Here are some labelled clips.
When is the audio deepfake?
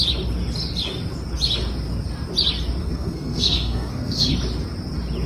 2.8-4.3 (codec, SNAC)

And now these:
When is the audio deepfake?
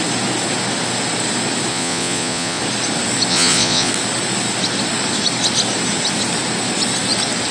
1.7-2.6 (vocoder, Vocos); 3.3-3.9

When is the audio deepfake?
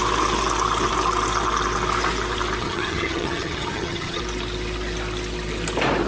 2.6-4.2 (vocoder, HiFi-GAN)